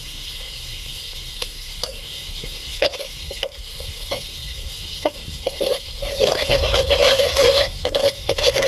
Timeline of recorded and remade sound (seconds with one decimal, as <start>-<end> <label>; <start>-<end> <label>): 0.0-8.7 remade